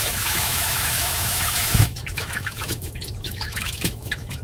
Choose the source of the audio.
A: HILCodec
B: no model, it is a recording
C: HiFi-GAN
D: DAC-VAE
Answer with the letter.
D